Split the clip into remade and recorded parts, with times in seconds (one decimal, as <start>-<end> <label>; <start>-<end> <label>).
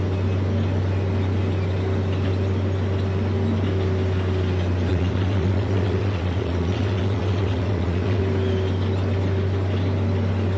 0.0-4.9 recorded; 4.9-8.2 remade; 8.2-10.6 recorded